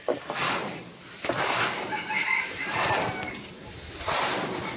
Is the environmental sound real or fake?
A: fake